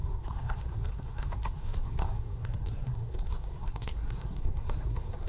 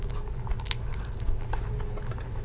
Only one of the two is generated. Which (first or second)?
first